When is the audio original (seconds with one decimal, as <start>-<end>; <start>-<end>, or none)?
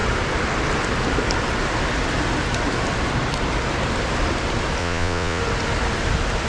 0.0-4.8; 5.4-6.5